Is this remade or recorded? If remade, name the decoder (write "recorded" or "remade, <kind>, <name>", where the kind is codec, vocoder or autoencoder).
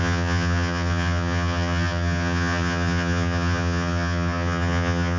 remade, vocoder, HiFi-GAN